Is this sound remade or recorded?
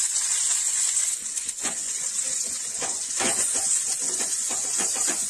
remade